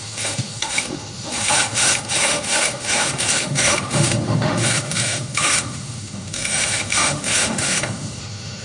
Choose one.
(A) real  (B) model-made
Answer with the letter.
B